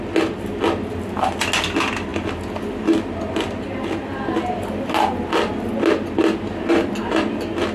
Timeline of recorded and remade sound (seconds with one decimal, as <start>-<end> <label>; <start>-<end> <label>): 0.0-7.7 recorded